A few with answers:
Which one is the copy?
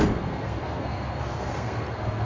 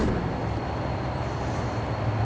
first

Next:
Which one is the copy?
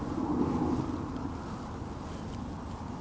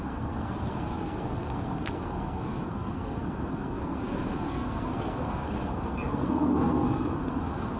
second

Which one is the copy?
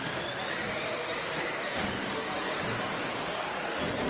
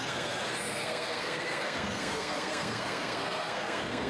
second